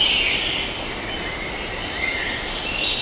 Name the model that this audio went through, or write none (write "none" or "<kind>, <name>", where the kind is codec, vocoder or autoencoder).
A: none